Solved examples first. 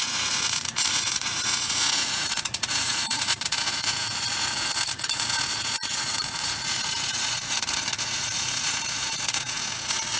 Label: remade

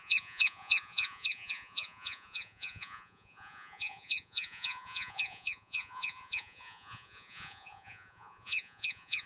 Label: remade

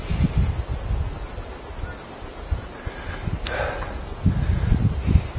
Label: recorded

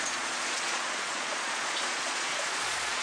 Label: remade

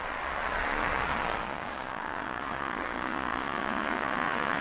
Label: remade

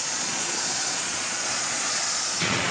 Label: remade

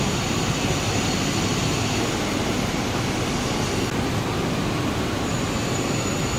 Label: recorded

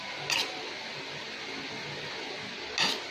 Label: recorded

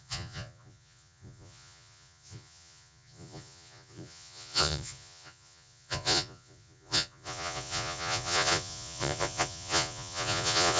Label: remade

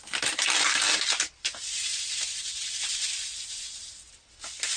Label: recorded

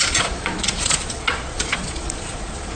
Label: remade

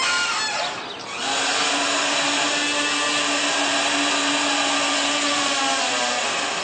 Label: recorded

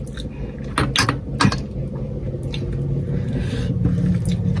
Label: recorded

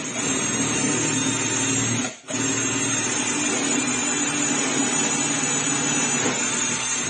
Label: recorded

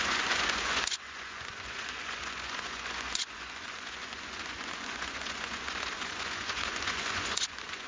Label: remade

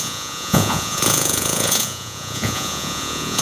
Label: remade